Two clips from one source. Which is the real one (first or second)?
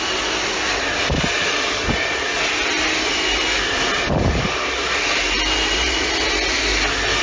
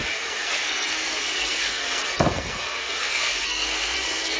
first